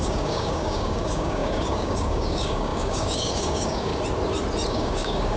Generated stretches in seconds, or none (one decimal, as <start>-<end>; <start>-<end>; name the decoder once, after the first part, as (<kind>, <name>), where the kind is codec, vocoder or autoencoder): 0.0-3.9 (codec, DAC); 4.7-5.4